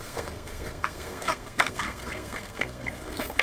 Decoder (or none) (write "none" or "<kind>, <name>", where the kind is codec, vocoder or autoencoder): codec, SNAC